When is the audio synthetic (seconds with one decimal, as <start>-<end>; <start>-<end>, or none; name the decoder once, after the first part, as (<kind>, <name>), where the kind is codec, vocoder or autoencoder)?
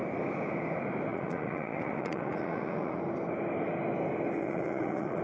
1.1-3.0 (vocoder, Vocos); 4.4-5.2